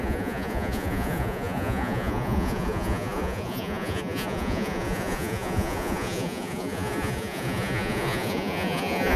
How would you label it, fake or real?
fake